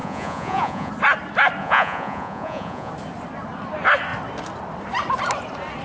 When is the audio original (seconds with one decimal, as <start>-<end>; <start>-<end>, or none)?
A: 0.9-1.6; 2.9-5.8